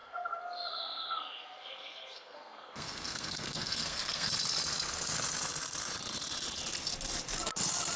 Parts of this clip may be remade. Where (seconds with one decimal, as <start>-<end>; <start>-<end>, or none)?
0.0-4.3